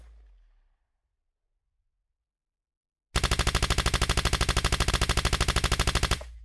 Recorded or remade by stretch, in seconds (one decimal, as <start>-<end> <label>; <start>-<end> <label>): 0.0-6.4 recorded